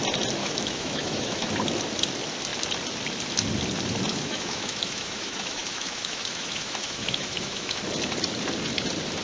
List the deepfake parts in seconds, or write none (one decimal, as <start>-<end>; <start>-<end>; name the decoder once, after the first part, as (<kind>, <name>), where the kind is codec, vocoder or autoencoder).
0.4-1.5 (autoencoder, DAC-VAE); 4.1-7.8